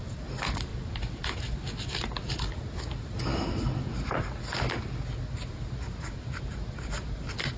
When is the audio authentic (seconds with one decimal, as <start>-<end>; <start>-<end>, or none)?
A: 0.0-7.6